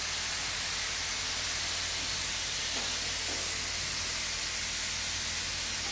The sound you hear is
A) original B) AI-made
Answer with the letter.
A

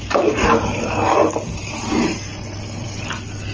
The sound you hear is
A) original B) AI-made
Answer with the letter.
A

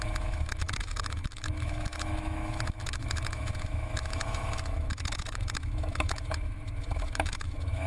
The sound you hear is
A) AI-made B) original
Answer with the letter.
A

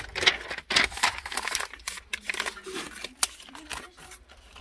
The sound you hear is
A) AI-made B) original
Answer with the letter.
B